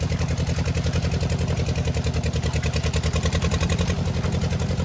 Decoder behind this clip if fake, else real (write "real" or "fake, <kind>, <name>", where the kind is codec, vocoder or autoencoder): real